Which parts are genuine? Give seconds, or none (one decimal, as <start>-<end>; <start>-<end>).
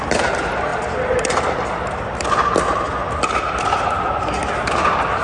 0.0-5.2